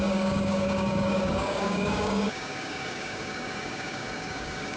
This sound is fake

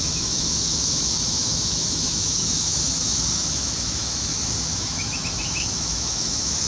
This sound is fake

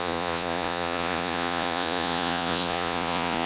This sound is fake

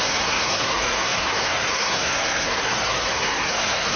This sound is fake